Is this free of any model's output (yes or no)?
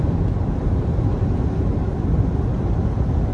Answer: yes